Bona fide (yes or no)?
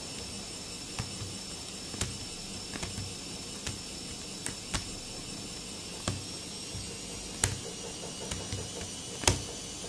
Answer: yes